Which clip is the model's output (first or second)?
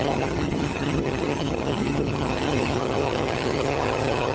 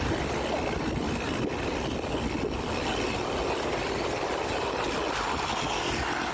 first